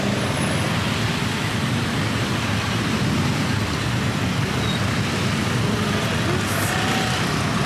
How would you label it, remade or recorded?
recorded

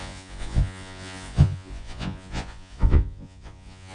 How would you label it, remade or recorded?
remade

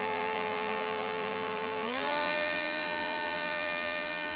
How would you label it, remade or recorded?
remade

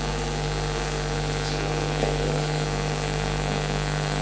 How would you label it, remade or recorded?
remade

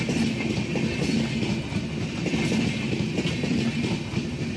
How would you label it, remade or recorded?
recorded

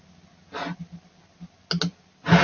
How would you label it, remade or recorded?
recorded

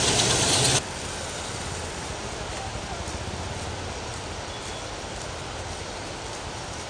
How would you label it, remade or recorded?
recorded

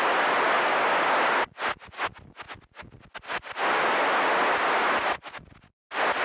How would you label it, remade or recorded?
recorded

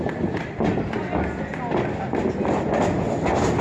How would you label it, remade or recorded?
recorded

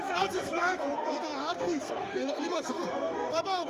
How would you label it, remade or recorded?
remade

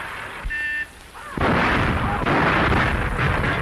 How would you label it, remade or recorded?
recorded